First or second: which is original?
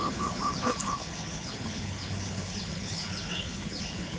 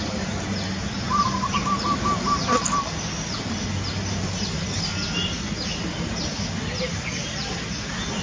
second